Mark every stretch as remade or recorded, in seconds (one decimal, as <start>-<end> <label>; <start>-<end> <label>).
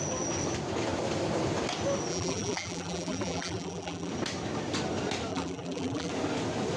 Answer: 0.0-2.1 recorded; 2.1-4.1 remade; 4.1-5.3 recorded; 5.3-6.1 remade; 6.1-6.8 recorded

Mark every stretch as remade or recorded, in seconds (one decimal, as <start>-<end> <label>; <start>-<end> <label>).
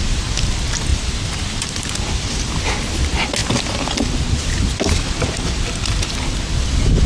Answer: 0.0-0.9 recorded; 0.9-1.9 remade; 1.9-7.1 recorded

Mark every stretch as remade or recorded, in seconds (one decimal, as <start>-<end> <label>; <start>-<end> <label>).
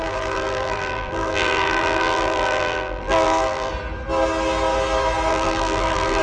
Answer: 0.0-3.7 remade; 3.7-5.3 recorded; 5.3-6.2 remade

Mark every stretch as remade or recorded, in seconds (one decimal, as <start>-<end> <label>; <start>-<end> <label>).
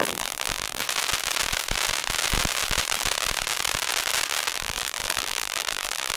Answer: 0.0-0.8 remade; 0.8-4.5 recorded; 4.5-6.2 remade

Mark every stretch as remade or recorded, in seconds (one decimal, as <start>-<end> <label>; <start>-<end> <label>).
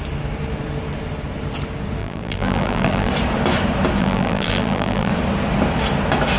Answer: 0.0-2.0 recorded; 2.0-3.1 remade; 3.1-4.0 recorded; 4.0-5.1 remade; 5.1-6.4 recorded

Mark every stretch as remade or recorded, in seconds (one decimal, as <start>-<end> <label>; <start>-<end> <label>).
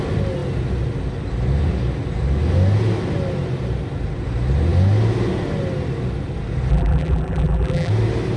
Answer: 0.0-6.7 recorded; 6.7-7.9 remade; 7.9-8.4 recorded